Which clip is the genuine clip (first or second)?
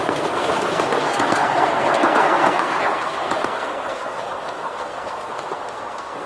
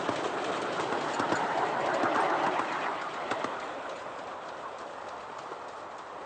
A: second